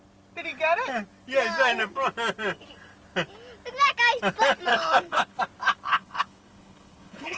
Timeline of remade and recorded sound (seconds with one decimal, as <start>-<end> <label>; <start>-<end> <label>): 0.0-4.7 recorded; 4.7-5.4 remade; 5.4-5.9 recorded; 5.9-7.4 remade